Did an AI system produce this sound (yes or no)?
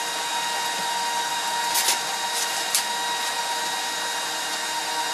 no